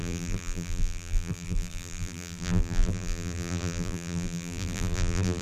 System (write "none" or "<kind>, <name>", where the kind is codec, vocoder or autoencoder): vocoder, BigVGAN v2